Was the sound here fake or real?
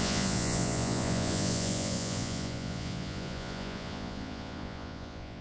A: fake